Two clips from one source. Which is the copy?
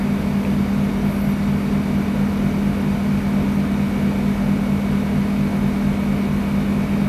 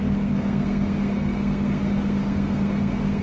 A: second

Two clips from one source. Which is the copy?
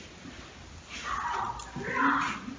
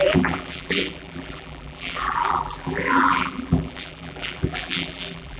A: second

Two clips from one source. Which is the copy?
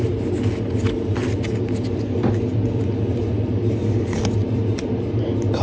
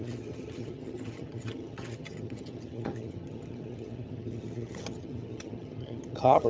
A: second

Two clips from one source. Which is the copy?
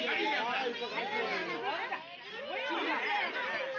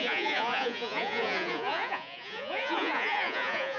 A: second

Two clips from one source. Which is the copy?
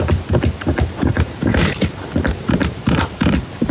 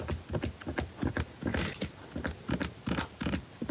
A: first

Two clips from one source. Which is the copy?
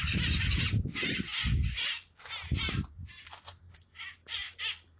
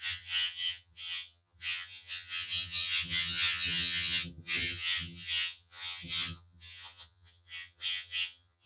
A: second